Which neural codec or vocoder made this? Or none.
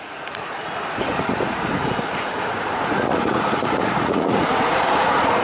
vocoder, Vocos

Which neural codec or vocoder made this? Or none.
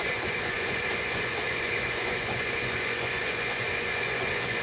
vocoder, Vocos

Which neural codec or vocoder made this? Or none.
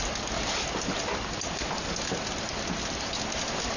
none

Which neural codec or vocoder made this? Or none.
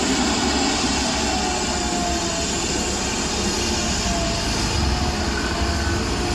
none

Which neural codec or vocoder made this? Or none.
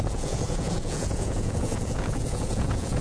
vocoder, Vocos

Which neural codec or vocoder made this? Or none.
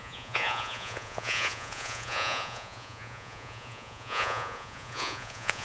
vocoder, Vocos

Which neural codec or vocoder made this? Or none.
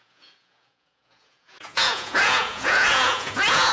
vocoder, Vocos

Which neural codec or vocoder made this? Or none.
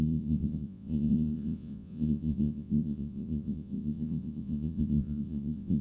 vocoder, Vocos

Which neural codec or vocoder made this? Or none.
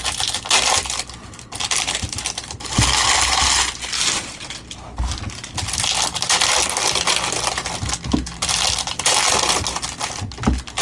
none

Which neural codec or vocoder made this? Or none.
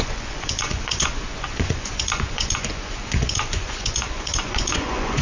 vocoder, Vocos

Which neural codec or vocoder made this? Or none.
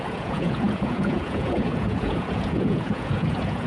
vocoder, Vocos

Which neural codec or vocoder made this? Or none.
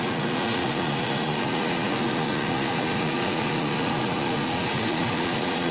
vocoder, Vocos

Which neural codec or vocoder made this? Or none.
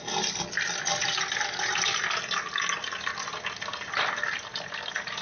none